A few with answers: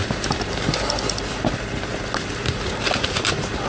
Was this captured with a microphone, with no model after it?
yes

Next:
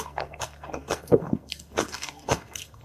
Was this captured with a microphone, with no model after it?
no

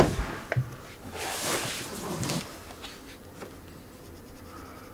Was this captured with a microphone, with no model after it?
yes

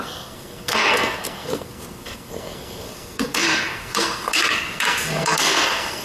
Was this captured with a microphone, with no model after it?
no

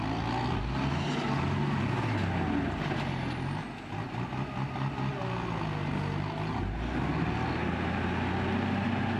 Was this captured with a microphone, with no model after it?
yes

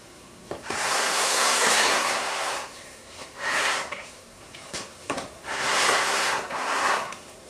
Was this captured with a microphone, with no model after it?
no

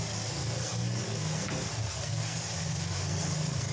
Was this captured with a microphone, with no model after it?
no